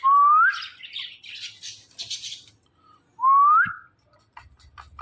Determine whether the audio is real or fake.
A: real